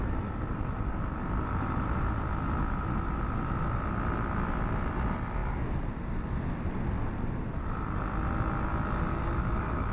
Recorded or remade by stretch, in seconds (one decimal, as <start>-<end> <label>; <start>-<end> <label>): 0.0-9.1 recorded; 9.1-9.9 remade